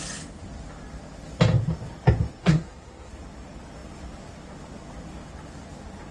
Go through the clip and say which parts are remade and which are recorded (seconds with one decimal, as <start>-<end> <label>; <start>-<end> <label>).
0.0-2.4 recorded; 2.4-3.1 remade; 3.1-6.1 recorded